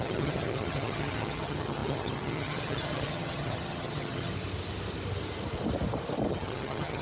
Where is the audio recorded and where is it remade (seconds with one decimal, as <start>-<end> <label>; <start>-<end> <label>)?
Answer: 0.0-4.3 remade; 4.3-6.3 recorded; 6.3-7.0 remade